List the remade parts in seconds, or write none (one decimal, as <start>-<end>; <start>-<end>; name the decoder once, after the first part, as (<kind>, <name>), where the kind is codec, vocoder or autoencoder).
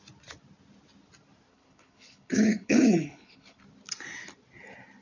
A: 1.5-3.6 (codec, HILCodec)